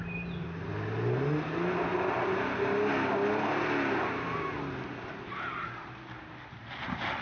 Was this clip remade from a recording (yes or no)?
no